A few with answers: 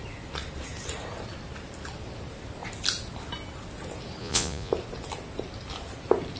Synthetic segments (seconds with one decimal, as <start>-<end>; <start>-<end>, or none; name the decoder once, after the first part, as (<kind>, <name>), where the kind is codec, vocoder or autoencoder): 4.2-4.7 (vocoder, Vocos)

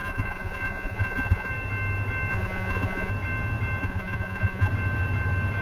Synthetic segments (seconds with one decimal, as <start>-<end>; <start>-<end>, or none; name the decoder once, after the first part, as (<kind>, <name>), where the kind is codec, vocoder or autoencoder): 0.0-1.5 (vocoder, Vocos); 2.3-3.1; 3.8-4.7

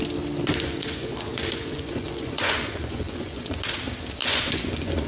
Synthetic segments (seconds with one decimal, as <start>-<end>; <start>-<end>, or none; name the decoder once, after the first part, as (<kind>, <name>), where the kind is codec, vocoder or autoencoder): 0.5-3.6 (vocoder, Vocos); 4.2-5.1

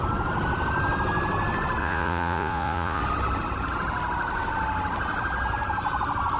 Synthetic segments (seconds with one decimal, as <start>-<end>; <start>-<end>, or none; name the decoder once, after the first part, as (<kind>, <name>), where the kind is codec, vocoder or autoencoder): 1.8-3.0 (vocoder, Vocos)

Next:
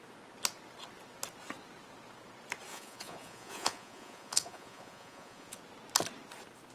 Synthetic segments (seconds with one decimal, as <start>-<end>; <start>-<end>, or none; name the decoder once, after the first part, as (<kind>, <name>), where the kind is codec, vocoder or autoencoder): 2.7-5.6 (vocoder, Vocos)

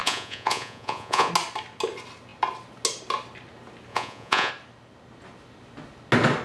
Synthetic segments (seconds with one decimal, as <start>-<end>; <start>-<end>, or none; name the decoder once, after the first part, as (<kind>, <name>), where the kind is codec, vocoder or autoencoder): 0.0-1.3 (vocoder, Vocos); 3.9-4.5

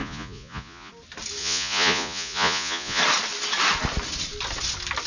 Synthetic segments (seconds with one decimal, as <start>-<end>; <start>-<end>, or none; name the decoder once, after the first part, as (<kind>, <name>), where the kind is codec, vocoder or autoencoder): 0.0-0.9 (vocoder, Vocos); 1.4-3.0

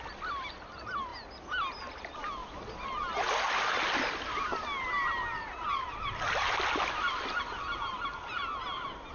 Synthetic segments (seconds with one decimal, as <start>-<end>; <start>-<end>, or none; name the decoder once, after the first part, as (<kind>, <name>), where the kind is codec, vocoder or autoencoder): none